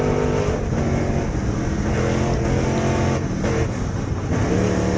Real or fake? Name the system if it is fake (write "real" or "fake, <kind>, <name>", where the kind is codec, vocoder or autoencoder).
real